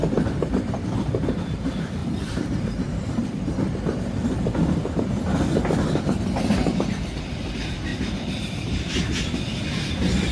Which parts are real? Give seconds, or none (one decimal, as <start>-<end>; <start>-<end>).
0.0-2.0; 3.5-7.9; 9.3-10.3